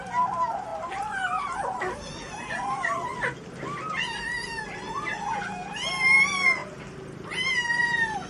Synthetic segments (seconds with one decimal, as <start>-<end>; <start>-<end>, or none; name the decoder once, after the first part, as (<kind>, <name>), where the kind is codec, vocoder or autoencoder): none